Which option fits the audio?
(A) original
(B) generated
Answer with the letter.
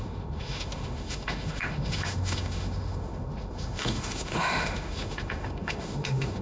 B